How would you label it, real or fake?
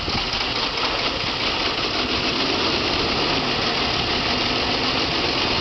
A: real